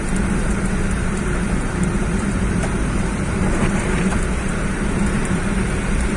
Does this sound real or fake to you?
fake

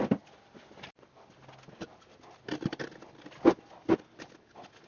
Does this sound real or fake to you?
real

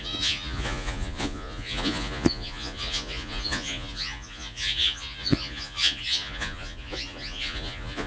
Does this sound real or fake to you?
fake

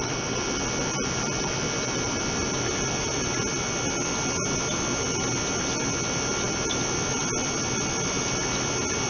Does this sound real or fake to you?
real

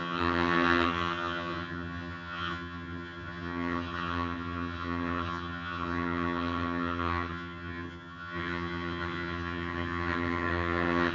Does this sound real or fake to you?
fake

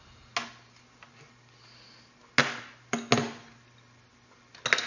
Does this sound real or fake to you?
real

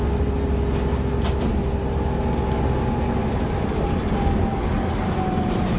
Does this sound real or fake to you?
real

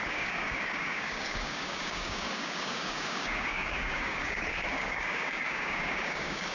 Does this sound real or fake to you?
fake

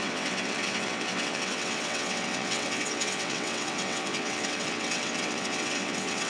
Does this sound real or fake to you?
fake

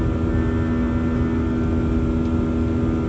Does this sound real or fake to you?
real